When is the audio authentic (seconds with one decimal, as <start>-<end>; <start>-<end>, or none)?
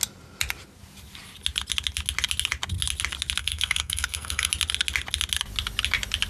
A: 0.0-3.4; 4.5-6.3